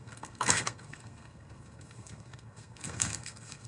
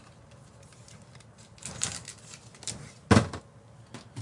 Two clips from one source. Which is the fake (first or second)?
first